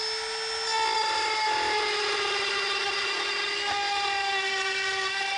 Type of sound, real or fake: real